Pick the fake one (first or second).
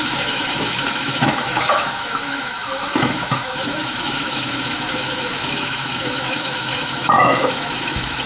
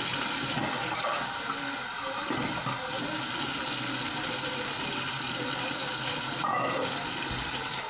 first